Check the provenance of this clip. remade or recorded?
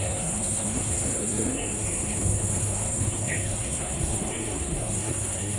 remade